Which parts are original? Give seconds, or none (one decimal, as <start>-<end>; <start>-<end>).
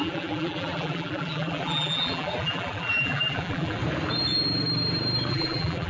3.8-5.3